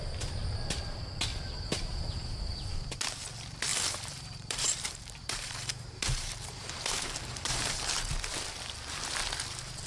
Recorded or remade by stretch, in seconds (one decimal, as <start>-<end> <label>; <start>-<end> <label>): 0.0-1.3 recorded; 1.3-3.0 remade; 3.0-3.7 recorded; 3.7-7.9 remade; 7.9-9.9 recorded